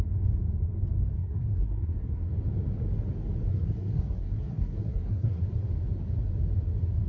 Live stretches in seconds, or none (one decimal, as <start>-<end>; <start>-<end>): 0.0-1.1; 2.3-3.5; 5.4-7.1